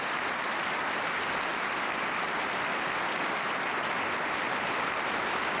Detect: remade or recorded recorded